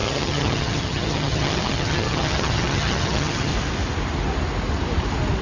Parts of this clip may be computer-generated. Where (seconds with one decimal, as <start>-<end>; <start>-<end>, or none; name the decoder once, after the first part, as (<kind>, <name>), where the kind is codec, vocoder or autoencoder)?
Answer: 0.0-3.5 (vocoder, HiFi-GAN)